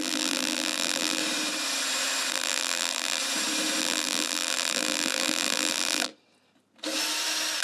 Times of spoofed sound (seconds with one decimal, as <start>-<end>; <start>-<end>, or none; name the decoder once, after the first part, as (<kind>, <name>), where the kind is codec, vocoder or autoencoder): 0.0-1.2 (vocoder, BigVGAN v2); 2.3-3.2; 3.8-6.1